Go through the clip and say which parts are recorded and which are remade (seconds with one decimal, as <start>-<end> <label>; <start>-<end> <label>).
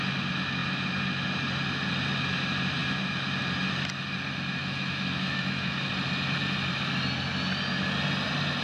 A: 0.0-4.6 recorded; 4.6-5.9 remade; 5.9-8.6 recorded